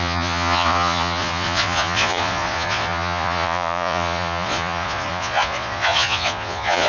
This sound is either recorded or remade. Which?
remade